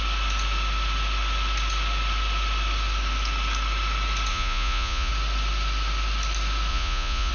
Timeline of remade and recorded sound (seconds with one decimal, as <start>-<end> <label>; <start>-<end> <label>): 0.0-4.3 recorded; 4.3-5.1 remade; 5.1-6.7 recorded; 6.7-7.3 remade